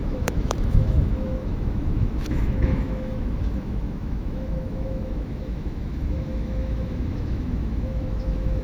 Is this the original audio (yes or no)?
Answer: no